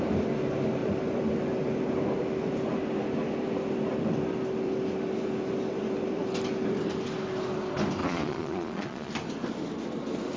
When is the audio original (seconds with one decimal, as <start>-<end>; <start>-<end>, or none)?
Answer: 0.0-8.0; 9.1-10.4